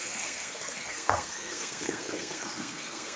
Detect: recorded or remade remade